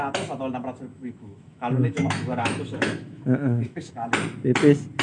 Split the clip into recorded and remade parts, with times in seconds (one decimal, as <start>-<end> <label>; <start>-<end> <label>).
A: 0.0-0.9 recorded; 0.9-3.9 remade; 3.9-5.0 recorded

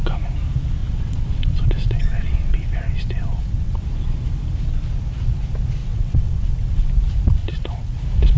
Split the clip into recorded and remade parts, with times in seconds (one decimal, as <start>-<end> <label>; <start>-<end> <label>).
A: 0.0-0.8 recorded; 0.8-3.8 remade; 3.8-5.8 recorded; 5.8-6.9 remade; 6.9-7.4 recorded; 7.4-8.0 remade; 8.0-8.4 recorded

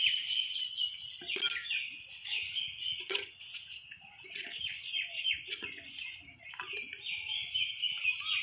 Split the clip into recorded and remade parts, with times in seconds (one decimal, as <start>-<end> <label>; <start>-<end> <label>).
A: 0.0-1.8 recorded; 1.8-6.0 remade; 6.0-8.4 recorded